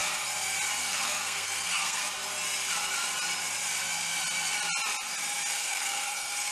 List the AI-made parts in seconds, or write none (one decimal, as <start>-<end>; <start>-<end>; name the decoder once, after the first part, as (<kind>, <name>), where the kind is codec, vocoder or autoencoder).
0.8-2.0 (codec, SNAC); 5.5-6.5